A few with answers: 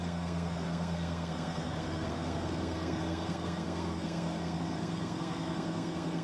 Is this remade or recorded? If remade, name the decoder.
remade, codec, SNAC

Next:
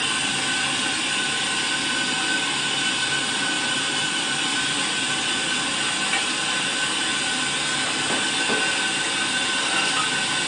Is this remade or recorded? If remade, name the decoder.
recorded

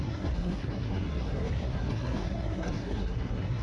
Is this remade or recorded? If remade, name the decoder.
remade, codec, SNAC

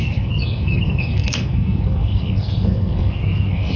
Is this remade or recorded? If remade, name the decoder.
remade, codec, SNAC